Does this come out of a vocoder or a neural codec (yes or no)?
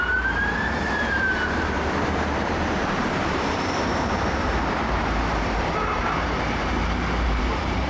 yes